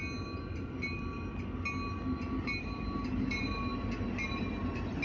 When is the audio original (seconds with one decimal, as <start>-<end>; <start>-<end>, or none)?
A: 0.0-5.0